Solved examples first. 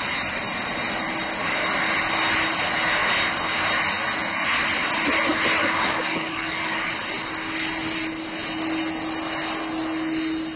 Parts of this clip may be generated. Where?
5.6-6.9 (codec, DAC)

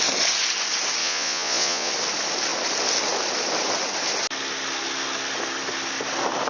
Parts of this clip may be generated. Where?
1.0-1.9 (vocoder, Vocos)

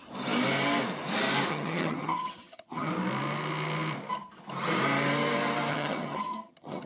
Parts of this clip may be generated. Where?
1.5-2.9 (vocoder, HiFi-GAN); 5.7-6.9

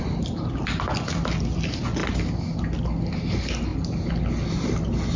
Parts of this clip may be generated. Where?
none

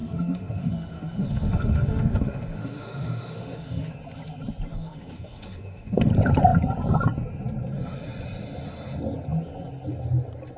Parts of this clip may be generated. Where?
0.0-3.9 (autoencoder, DAC-VAE); 4.7-6.1

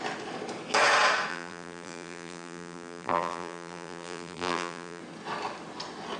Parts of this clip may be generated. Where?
1.3-5.0 (vocoder, BigVGAN v2)

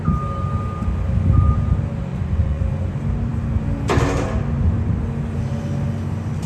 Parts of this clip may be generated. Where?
2.1-2.6 (vocoder, Vocos)